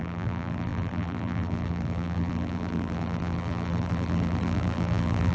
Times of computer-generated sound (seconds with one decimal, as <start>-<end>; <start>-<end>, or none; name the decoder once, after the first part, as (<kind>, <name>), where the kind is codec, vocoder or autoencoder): 0.0-5.3 (vocoder, BigVGAN v2)